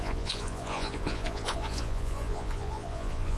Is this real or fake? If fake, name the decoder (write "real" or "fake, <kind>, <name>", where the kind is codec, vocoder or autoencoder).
fake, vocoder, Vocos